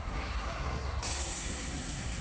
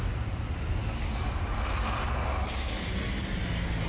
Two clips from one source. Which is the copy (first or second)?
first